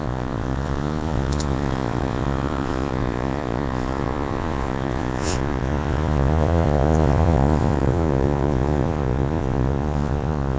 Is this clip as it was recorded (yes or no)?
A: no